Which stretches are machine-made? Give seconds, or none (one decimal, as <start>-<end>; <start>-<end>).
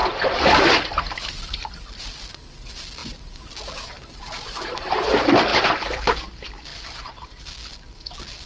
5.5-6.3; 6.7-7.5